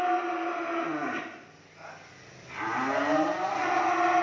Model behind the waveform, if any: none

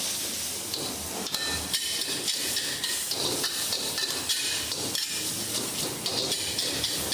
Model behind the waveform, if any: none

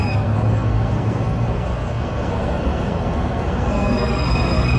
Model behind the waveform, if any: codec, SNAC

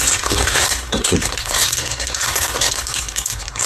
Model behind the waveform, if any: codec, SNAC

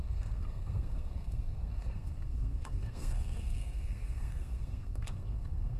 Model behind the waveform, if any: codec, SNAC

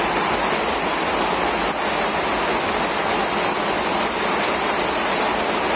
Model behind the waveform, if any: none